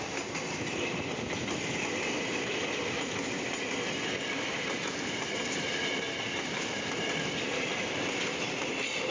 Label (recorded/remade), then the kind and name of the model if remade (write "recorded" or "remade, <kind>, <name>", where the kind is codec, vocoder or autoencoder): recorded